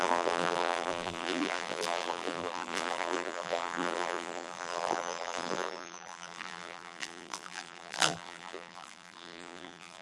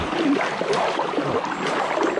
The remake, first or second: first